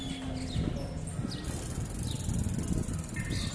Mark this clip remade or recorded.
recorded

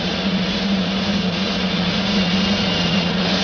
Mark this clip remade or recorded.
remade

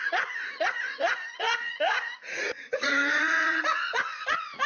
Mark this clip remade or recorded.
remade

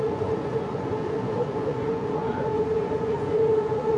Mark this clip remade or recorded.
remade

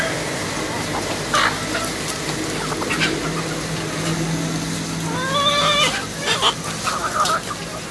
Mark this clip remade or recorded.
recorded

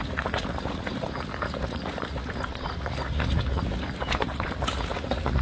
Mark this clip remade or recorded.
remade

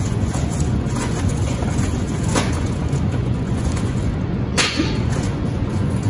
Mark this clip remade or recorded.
remade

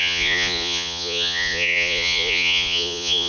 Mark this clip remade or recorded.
remade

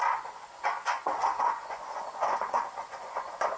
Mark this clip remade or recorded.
remade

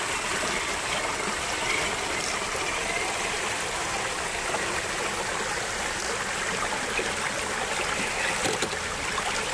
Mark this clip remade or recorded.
recorded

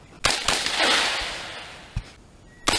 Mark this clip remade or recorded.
recorded